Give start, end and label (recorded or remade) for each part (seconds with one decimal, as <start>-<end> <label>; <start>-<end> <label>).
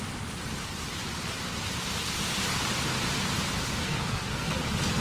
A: 0.0-3.8 recorded; 3.8-4.6 remade; 4.6-5.0 recorded